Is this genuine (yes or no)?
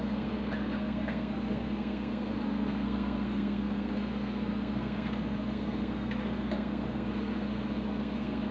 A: no